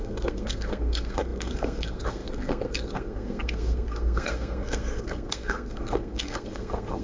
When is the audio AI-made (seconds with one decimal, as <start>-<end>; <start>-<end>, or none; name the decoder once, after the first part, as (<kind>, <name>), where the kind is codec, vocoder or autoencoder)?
0.0-7.0 (codec, SNAC)

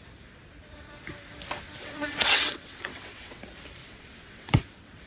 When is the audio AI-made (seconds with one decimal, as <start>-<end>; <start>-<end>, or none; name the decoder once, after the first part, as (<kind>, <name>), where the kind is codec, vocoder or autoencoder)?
1.8-3.4 (vocoder, WaveNeXt); 3.8-5.1

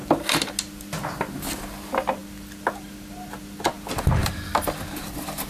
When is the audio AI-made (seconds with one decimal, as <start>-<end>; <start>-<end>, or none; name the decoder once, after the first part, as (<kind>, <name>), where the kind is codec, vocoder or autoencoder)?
none

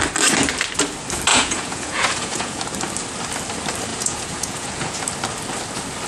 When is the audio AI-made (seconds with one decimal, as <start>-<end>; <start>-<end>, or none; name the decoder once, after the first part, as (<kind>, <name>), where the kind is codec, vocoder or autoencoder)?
1.3-2.6 (vocoder, Vocos); 3.9-5.0

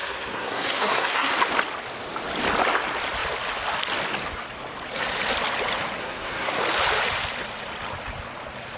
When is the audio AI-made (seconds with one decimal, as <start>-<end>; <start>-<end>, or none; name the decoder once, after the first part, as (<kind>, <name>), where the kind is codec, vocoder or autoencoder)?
0.0-1.3 (codec, SNAC); 6.0-6.6

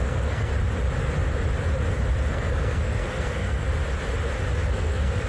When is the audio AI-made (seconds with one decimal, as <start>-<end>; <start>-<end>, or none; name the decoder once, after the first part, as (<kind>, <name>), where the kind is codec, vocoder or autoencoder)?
0.0-0.5 (codec, SNAC); 2.3-3.7; 4.7-5.3

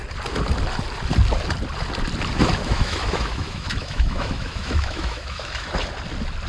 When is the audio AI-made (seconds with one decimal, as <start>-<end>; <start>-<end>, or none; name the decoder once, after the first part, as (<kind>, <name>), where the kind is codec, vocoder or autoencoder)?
2.6-5.7 (autoencoder, DAC-VAE)

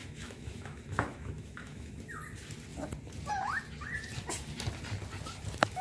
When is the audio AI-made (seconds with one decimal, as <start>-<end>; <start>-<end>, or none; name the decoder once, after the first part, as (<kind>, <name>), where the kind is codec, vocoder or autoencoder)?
0.0-2.0 (autoencoder, DAC-VAE)